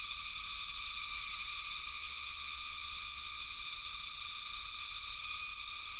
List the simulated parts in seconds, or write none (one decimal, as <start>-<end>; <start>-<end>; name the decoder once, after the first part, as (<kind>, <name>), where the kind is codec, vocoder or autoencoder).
1.9-3.5 (vocoder, Vocos)